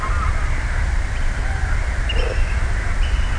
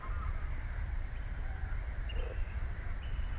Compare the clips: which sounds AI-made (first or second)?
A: second